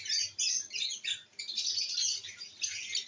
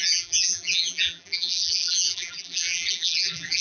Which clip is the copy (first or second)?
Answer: second